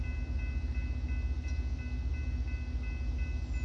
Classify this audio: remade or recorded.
recorded